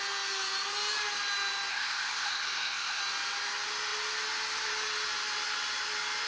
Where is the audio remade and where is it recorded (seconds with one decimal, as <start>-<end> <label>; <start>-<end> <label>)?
0.0-1.7 recorded; 1.7-3.0 remade; 3.0-6.3 recorded